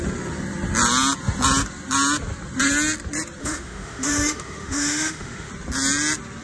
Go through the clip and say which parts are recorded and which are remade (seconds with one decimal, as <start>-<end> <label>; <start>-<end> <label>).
0.0-3.4 recorded; 3.4-5.5 remade; 5.5-6.4 recorded